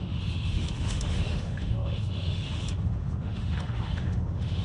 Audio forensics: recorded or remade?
remade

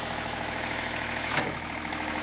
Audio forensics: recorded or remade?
remade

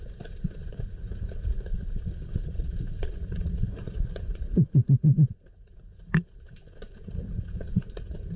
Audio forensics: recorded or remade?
remade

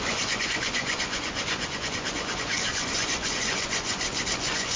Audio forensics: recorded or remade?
remade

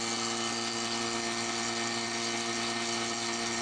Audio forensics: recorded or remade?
recorded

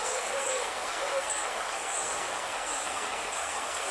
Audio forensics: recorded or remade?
remade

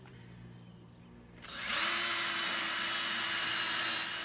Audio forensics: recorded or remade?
recorded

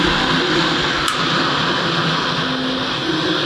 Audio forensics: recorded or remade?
recorded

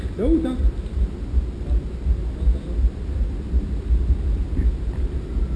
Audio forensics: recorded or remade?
recorded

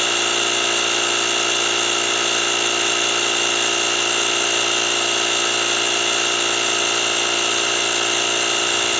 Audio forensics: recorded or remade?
recorded